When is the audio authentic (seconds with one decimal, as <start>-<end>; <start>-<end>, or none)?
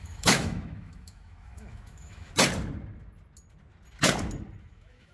2.3-4.6